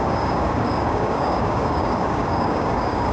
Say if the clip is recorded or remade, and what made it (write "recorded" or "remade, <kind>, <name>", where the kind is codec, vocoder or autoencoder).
remade, codec, DAC